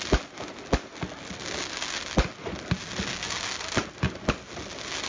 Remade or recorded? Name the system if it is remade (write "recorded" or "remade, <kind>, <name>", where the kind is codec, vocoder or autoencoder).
recorded